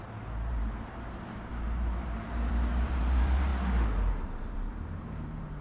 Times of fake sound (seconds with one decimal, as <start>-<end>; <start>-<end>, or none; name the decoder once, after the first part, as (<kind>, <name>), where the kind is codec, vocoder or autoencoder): 0.0-3.5 (vocoder, BigVGAN v2); 4.2-5.6